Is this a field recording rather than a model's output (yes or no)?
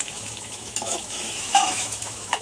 no